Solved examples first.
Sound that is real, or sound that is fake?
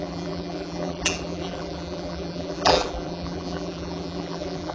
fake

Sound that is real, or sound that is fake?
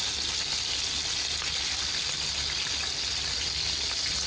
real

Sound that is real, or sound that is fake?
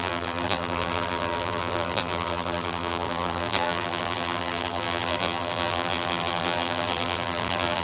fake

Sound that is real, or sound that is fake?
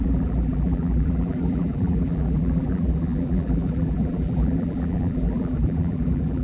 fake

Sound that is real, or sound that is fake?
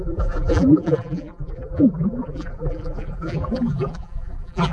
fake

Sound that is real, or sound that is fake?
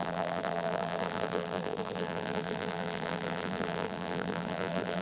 fake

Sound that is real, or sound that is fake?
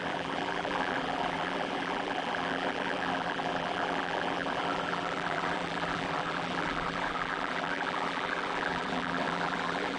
fake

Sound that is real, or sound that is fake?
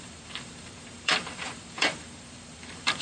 fake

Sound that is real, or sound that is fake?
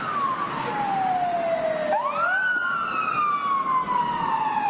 real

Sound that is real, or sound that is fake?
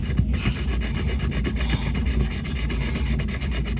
real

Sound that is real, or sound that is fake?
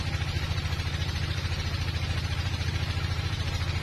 fake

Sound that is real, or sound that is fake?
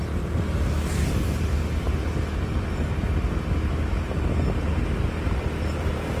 real